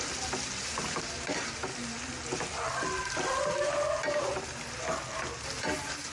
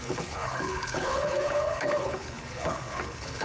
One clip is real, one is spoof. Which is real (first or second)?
first